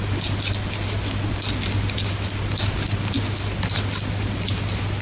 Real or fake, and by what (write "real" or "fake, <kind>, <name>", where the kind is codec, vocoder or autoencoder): real